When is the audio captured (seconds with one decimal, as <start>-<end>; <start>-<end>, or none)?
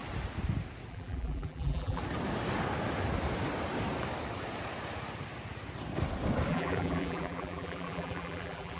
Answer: 0.0-0.9; 2.0-6.5